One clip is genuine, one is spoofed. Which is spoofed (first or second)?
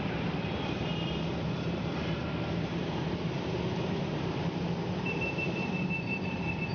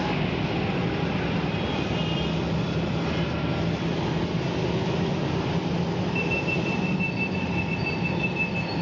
first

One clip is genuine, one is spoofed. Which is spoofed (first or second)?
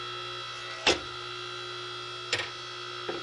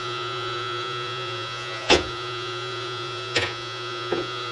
second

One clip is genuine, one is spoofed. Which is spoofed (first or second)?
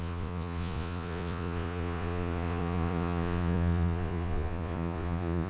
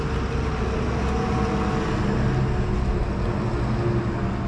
first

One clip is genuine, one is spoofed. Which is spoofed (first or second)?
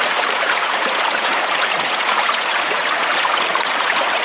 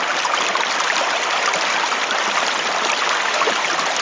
first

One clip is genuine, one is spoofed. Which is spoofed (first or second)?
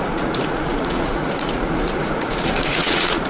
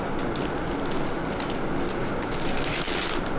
first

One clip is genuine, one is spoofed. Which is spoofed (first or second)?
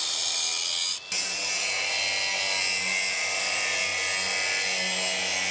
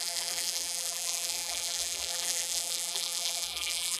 second